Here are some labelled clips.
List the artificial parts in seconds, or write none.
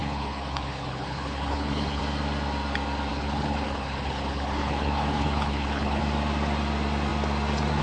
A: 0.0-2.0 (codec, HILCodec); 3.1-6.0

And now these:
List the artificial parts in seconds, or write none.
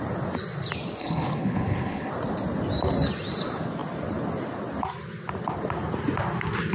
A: 1.0-2.1 (codec, HILCodec)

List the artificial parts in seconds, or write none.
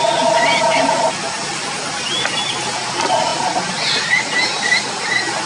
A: none